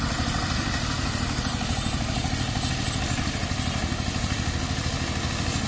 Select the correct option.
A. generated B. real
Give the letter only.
B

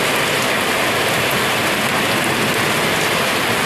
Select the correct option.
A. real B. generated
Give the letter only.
A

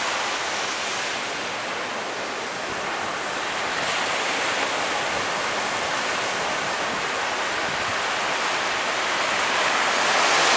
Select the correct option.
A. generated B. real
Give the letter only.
B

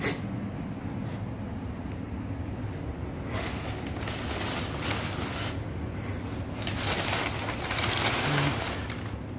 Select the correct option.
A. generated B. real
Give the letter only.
B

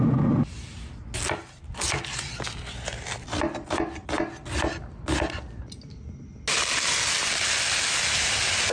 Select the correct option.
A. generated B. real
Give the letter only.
B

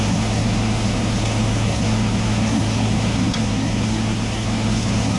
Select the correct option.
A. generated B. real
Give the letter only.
A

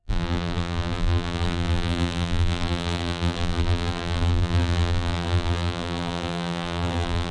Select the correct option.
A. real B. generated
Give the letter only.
B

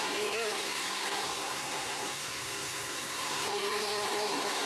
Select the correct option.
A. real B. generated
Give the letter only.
B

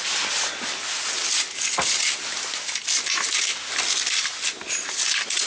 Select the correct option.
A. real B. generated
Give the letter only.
A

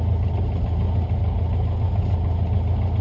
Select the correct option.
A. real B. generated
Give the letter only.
A